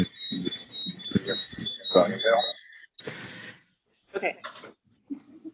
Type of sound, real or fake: real